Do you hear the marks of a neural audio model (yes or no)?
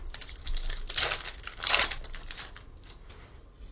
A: no